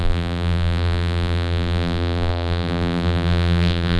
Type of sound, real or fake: fake